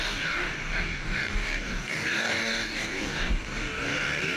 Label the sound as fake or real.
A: fake